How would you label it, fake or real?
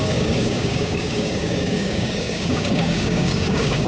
fake